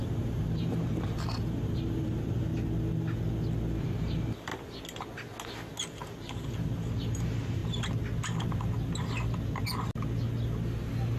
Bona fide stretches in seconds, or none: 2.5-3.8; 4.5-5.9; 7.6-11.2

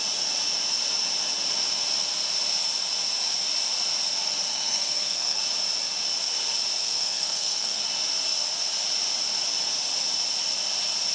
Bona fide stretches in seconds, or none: 0.0-4.5; 5.4-6.8; 7.8-11.1

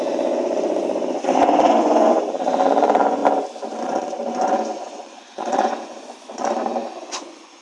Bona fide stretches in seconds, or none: 3.2-3.8

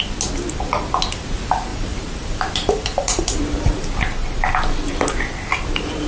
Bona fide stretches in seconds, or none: 0.0-1.7; 3.8-6.1